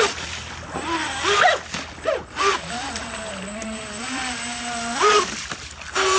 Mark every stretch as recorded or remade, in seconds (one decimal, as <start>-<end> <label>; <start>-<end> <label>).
0.0-6.2 recorded